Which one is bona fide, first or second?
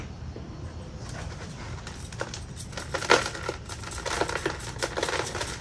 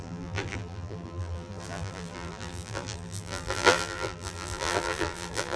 first